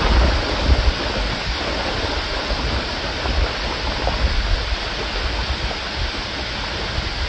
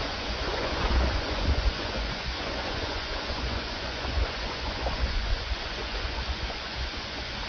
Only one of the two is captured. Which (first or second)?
first